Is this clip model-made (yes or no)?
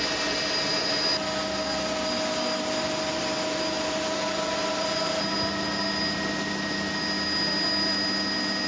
no